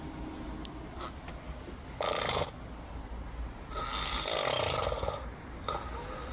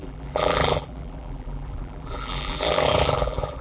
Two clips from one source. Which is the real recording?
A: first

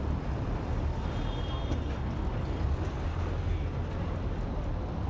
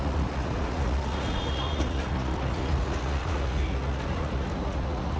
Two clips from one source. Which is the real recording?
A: first